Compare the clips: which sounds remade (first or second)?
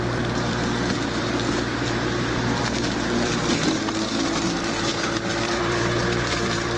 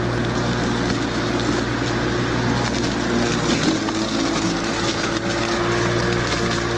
first